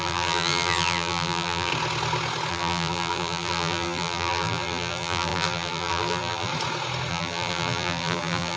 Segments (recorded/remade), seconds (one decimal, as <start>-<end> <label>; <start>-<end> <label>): 0.0-1.7 remade; 1.7-2.5 recorded; 2.5-6.5 remade; 6.5-7.1 recorded; 7.1-8.6 remade